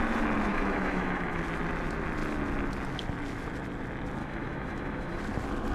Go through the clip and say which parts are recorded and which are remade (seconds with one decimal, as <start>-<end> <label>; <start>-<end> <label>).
0.0-0.5 recorded; 0.5-1.4 remade; 1.4-4.2 recorded; 4.2-5.2 remade; 5.2-5.7 recorded